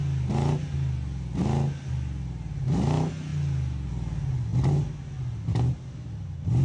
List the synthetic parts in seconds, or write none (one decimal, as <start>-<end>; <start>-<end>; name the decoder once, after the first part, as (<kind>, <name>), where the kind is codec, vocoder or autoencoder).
none